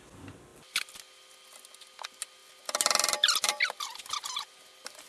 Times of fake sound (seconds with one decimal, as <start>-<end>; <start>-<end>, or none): none